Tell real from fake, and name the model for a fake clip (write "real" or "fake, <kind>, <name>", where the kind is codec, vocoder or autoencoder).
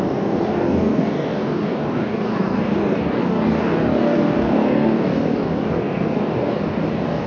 fake, codec, DAC